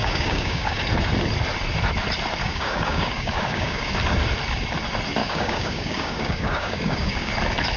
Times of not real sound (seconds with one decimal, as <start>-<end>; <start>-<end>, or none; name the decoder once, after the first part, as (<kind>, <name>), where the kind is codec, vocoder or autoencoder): 0.0-0.8 (codec, DAC); 2.4-3.9; 5.2-7.3